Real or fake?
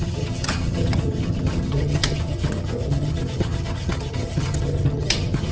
fake